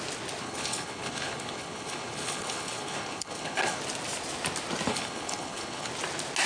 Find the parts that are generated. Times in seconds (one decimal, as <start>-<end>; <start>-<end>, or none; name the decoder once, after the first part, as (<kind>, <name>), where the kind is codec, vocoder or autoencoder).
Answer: 0.4-3.8 (codec, HILCodec); 4.9-5.9